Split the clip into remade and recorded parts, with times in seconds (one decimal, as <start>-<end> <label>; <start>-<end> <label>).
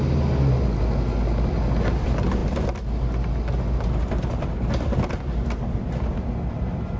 0.0-7.0 recorded